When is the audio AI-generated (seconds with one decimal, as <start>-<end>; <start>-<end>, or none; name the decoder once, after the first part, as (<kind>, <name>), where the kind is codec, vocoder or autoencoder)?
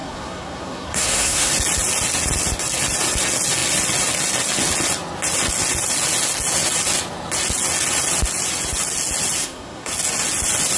0.0-1.5 (codec, SNAC); 9.4-9.9